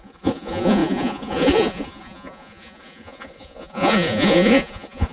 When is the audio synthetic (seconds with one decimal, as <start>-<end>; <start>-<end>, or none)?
0.0-5.1